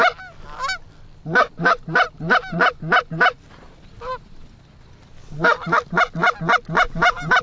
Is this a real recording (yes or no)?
yes